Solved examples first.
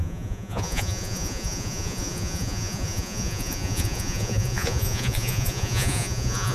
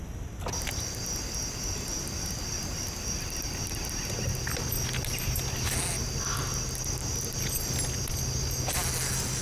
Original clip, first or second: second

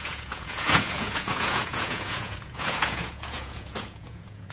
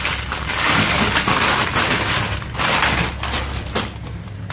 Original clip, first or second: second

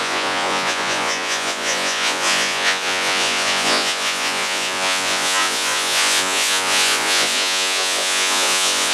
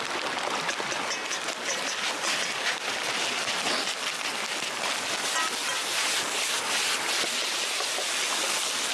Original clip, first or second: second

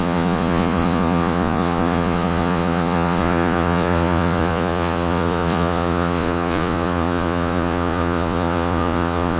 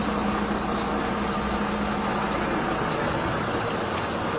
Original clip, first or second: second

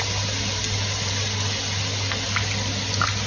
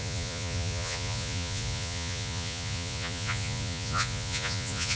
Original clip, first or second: first